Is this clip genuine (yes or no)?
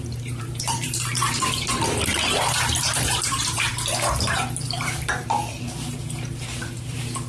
no